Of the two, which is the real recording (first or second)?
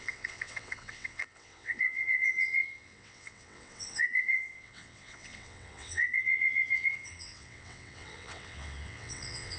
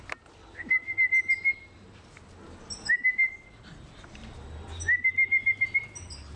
second